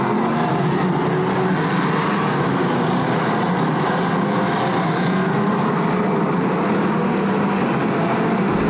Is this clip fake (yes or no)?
no